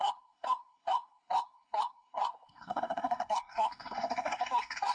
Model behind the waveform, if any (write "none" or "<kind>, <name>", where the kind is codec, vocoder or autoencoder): codec, SNAC